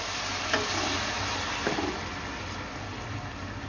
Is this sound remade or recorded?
recorded